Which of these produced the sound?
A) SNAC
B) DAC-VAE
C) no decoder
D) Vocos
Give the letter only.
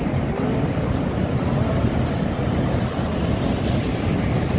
C